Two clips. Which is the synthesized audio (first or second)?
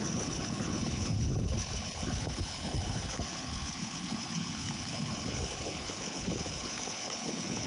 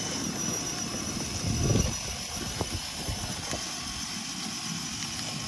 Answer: first